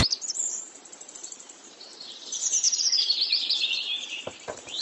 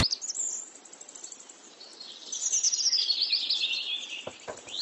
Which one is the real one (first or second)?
second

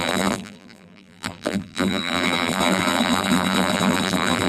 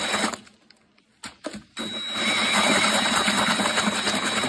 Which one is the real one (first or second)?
second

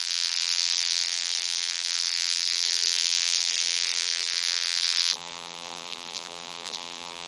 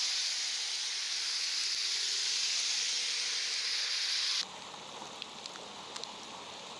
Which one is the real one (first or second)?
second